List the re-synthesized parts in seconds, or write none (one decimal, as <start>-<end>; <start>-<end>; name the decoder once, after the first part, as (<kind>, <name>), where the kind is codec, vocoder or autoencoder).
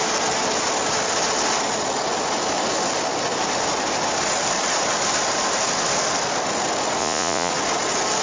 7.0-7.5 (vocoder, Vocos)